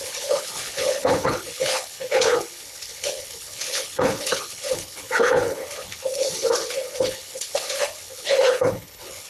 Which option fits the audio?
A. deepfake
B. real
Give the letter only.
A